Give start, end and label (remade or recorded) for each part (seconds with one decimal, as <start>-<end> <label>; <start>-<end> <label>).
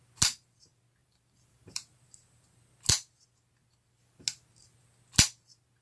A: 0.0-1.0 recorded; 1.0-2.6 remade; 2.6-5.8 recorded